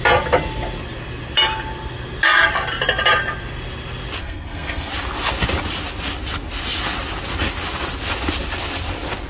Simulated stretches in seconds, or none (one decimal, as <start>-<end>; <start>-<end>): 4.2-4.9